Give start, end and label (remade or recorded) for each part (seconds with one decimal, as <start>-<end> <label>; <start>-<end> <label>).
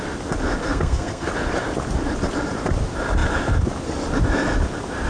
0.0-0.6 recorded; 0.6-1.3 remade; 1.3-5.1 recorded